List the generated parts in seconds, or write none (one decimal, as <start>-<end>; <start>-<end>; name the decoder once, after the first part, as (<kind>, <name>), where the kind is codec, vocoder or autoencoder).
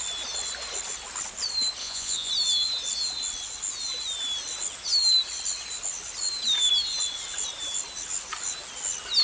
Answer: 1.8-2.3 (vocoder, Vocos)